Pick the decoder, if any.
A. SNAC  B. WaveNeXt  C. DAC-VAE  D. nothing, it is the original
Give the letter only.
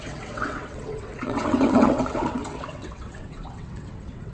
B